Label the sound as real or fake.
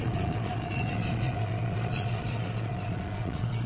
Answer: fake